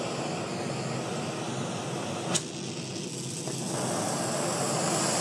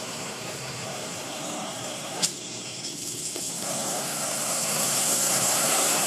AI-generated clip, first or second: second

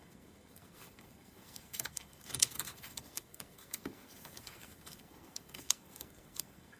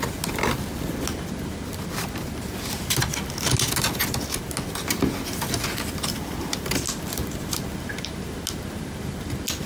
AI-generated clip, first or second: first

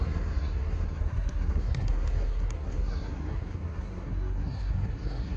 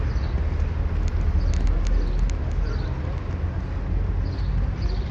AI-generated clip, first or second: first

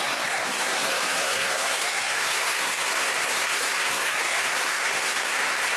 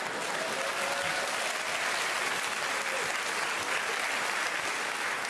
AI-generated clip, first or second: first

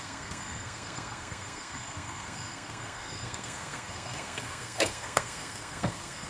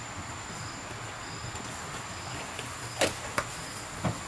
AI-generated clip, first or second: first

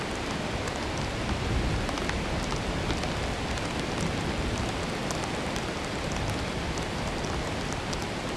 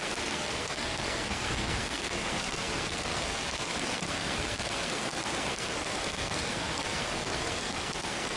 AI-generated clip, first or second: second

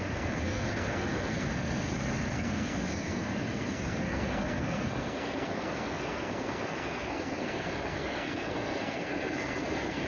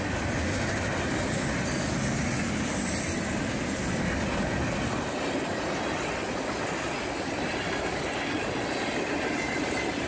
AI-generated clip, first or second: first